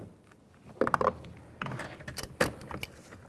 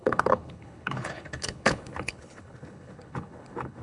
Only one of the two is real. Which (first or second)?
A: first